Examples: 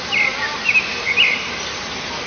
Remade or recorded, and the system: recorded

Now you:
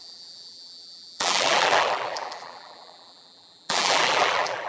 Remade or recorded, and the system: remade, vocoder, BigVGAN v2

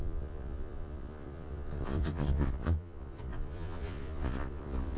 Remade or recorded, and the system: remade, vocoder, Vocos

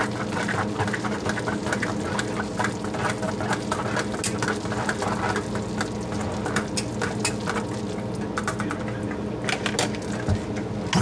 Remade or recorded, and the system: recorded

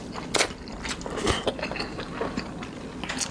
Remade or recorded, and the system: recorded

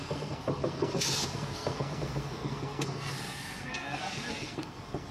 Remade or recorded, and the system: remade, codec, SNAC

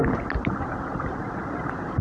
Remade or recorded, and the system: recorded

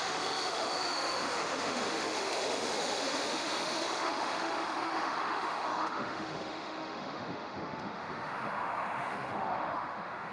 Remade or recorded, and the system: remade, autoencoder, DAC-VAE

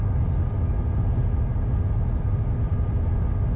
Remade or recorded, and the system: recorded